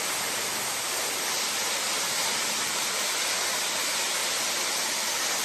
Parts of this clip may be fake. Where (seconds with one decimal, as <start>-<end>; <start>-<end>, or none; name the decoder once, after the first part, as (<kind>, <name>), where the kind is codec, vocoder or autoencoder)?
2.2-3.6 (vocoder, BigVGAN v2); 4.2-4.8